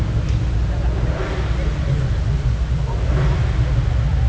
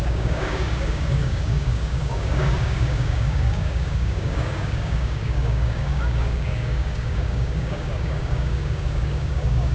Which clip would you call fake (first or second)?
second